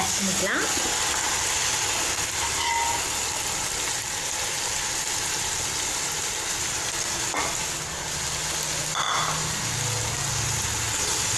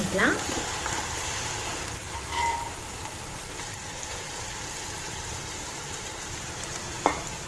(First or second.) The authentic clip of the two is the first